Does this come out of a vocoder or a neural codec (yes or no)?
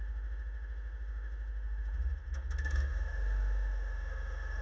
yes